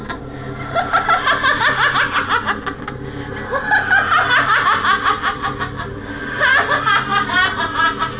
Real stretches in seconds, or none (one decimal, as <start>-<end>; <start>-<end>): 0.0-8.2